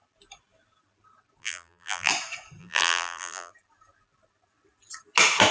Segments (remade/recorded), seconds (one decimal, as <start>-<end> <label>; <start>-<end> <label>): 0.0-1.4 recorded; 1.4-2.1 remade; 2.1-2.6 recorded; 2.6-3.5 remade; 3.5-5.5 recorded